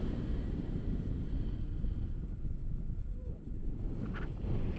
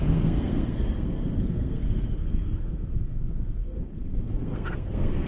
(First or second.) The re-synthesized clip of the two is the second